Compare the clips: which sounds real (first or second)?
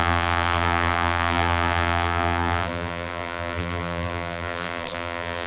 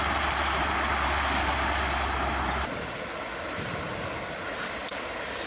second